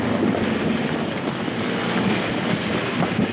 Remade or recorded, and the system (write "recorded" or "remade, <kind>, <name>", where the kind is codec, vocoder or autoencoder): recorded